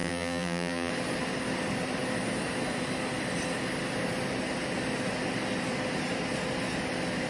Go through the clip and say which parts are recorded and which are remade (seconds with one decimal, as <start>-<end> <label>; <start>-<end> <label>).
0.0-0.9 remade; 0.9-7.3 recorded